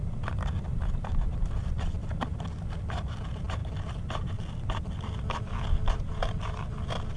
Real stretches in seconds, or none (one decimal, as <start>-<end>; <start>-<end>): 0.0-7.2